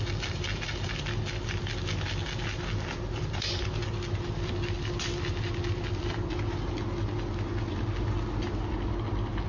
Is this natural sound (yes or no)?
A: yes